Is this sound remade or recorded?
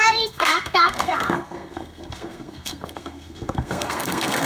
remade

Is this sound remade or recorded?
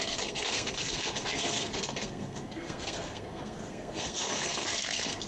remade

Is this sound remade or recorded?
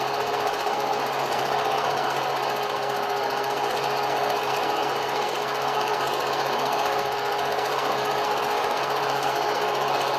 remade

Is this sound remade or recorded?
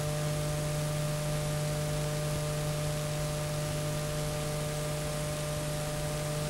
recorded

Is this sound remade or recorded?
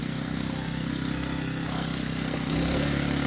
remade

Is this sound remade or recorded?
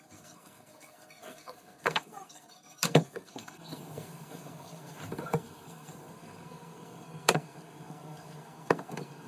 remade